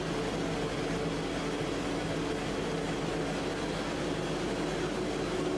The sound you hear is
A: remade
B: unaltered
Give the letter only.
B